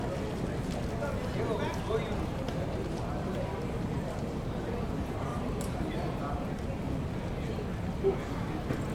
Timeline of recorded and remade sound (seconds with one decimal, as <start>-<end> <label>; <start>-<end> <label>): 0.0-1.7 recorded; 1.7-6.2 remade; 6.2-8.9 recorded